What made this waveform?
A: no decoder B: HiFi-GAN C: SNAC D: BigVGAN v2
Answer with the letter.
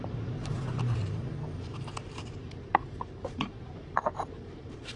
D